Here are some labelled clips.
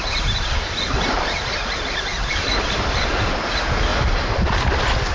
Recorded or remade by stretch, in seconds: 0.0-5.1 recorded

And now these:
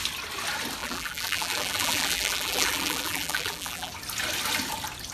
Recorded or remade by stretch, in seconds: 0.0-0.8 recorded; 0.8-3.9 remade; 3.9-5.1 recorded

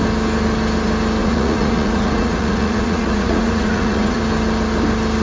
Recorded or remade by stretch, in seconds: 0.0-1.2 recorded; 1.2-4.2 remade; 4.2-5.2 recorded